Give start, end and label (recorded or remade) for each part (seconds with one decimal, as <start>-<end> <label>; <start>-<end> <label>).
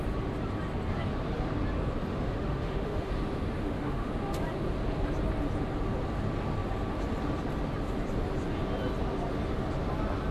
0.0-2.1 recorded; 2.1-3.1 remade; 3.1-3.6 recorded; 3.6-4.1 remade; 4.1-10.3 recorded